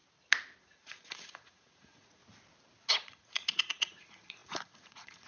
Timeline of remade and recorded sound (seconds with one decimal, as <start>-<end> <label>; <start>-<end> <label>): 0.0-0.6 recorded; 0.6-2.2 remade; 2.2-2.9 recorded; 2.9-5.3 remade